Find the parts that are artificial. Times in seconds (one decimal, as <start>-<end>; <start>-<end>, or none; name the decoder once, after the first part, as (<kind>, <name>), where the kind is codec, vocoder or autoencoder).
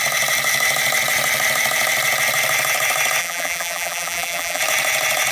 3.2-4.6 (vocoder, BigVGAN v2)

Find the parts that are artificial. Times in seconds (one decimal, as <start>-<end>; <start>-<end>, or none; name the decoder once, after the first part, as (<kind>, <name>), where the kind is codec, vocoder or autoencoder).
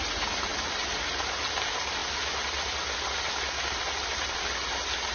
none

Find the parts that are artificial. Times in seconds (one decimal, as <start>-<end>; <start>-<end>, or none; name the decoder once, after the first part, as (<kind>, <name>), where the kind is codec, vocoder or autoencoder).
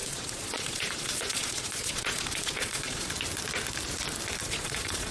0.0-3.1 (vocoder, Vocos); 4.4-5.1